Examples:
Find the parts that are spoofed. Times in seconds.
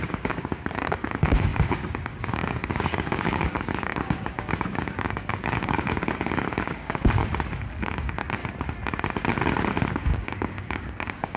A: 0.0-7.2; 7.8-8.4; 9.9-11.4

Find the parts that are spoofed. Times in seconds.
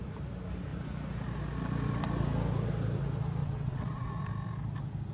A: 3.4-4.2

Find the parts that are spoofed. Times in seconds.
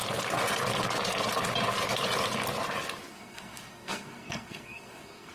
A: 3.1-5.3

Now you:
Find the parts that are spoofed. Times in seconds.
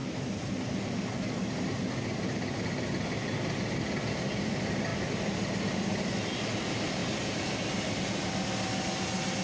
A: 7.0-7.9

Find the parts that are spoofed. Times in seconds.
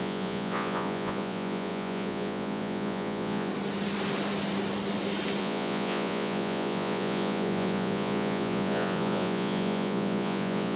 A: 0.0-3.5; 5.4-10.8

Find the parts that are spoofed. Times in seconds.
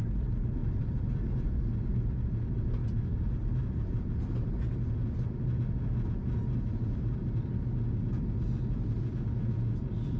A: 0.6-1.6; 2.8-4.0